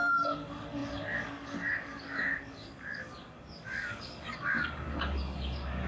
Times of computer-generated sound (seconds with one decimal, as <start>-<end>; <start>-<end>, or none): 0.0-5.9